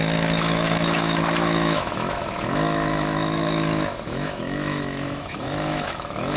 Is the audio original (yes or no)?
no